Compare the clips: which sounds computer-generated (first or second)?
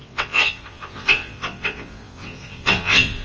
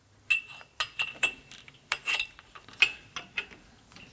first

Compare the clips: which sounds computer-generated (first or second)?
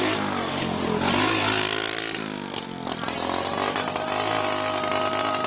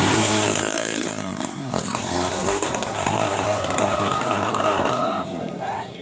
second